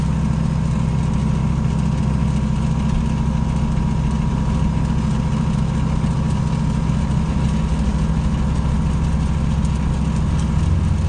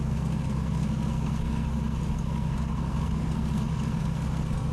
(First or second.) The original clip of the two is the first